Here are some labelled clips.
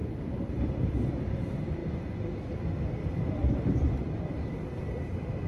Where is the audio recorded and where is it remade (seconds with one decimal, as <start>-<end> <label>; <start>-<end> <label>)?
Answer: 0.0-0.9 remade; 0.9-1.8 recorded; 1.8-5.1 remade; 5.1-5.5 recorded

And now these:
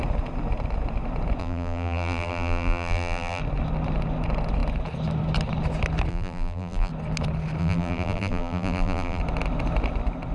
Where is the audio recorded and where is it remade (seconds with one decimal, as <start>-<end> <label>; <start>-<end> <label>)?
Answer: 0.0-1.4 recorded; 1.4-3.4 remade; 3.4-6.1 recorded; 6.1-6.9 remade; 6.9-7.6 recorded; 7.6-9.2 remade; 9.2-10.3 recorded

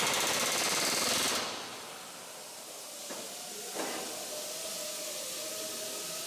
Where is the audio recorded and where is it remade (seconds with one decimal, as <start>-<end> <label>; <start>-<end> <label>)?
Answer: 0.0-6.3 recorded